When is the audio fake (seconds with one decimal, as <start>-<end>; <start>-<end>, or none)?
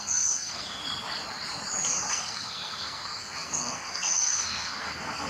0.0-0.8; 2.1-5.3